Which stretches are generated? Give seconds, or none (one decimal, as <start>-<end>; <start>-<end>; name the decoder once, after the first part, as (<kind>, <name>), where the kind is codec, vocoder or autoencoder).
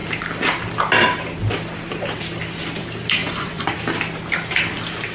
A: 3.2-3.7 (vocoder, Vocos)